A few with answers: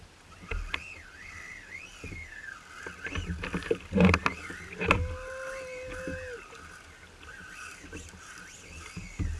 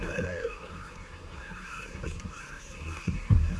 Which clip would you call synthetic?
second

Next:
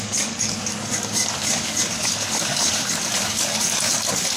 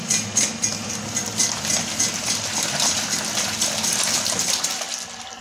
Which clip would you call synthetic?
first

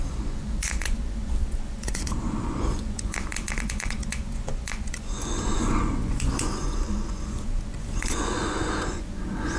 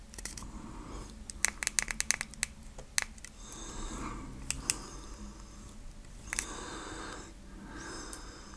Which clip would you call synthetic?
first